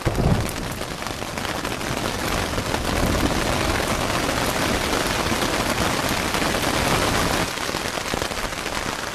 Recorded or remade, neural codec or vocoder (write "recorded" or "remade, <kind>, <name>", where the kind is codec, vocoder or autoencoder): recorded